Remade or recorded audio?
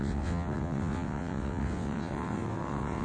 remade